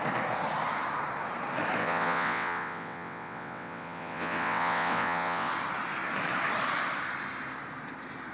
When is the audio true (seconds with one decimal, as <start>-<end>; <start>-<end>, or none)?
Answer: 0.0-1.8; 5.5-8.3